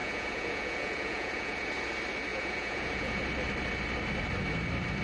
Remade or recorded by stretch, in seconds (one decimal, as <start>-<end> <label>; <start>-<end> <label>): 0.0-1.7 remade; 1.7-2.3 recorded; 2.3-3.2 remade; 3.2-5.0 recorded